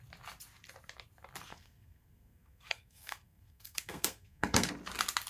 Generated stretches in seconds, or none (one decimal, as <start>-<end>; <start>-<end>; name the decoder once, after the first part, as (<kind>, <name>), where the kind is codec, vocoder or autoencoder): 1.5-4.7 (codec, SNAC)